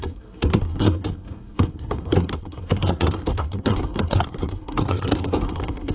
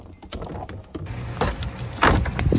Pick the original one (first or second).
second